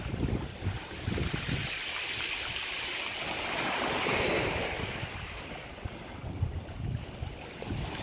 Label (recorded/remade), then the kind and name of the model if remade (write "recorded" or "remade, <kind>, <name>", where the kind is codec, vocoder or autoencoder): recorded